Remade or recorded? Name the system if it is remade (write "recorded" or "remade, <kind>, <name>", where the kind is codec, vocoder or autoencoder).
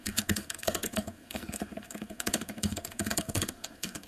remade, codec, SNAC